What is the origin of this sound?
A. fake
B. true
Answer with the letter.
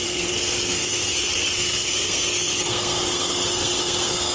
A